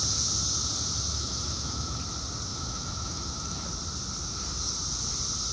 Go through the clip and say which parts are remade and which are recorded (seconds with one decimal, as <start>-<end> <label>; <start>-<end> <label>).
0.0-1.1 recorded; 1.1-2.0 remade; 2.0-2.5 recorded; 2.5-3.6 remade; 3.6-5.5 recorded